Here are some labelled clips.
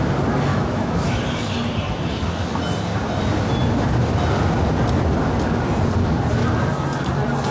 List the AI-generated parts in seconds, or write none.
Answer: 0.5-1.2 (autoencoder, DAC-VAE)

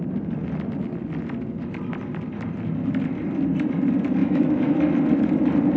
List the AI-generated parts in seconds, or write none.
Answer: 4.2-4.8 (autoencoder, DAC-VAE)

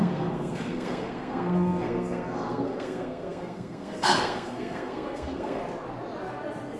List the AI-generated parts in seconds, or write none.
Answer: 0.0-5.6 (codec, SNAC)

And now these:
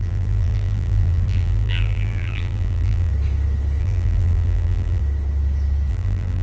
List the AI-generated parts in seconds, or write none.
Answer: 0.0-3.1 (vocoder, BigVGAN v2); 3.8-5.0; 5.9-6.4